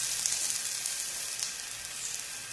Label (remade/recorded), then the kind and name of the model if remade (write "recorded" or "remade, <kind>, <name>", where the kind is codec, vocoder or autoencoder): recorded